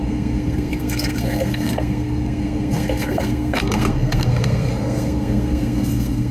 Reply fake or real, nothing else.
fake